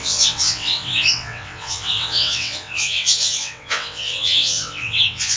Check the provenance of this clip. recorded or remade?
remade